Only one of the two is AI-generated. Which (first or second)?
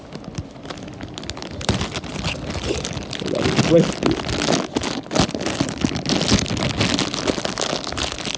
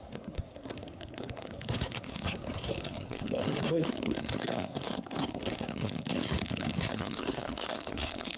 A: second